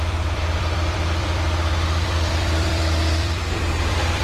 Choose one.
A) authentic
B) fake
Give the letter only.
B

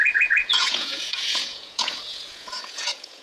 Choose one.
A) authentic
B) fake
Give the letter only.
B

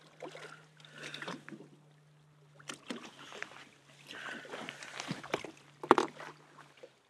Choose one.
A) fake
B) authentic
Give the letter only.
B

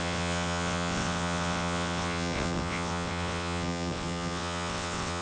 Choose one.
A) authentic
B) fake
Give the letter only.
B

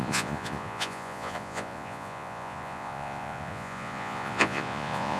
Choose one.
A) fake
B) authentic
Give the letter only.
A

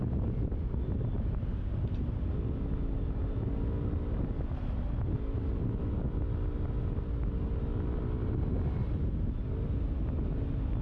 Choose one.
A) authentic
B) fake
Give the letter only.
A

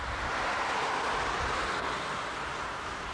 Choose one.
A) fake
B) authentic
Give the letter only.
B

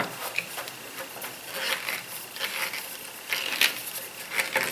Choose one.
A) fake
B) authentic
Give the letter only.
B